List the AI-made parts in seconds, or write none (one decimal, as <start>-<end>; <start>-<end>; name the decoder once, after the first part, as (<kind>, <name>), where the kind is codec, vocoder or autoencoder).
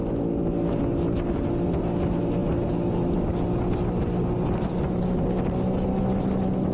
none